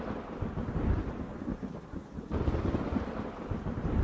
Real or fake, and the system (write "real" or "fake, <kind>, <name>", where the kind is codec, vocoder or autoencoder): real